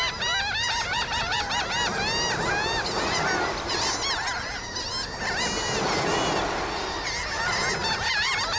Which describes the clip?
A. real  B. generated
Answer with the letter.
A